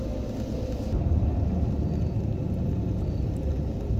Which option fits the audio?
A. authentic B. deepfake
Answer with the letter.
A